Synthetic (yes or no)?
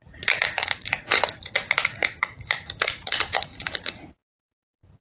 yes